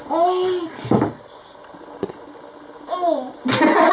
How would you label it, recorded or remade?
recorded